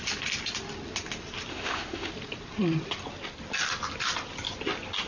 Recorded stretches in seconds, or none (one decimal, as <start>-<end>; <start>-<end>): 0.0-1.5; 2.1-5.1